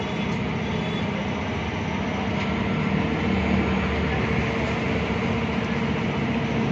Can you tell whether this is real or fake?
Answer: real